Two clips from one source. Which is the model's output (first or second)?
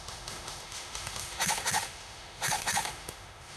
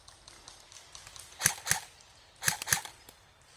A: first